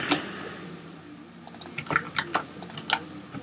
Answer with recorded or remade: recorded